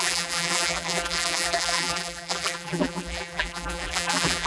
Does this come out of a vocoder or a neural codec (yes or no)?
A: yes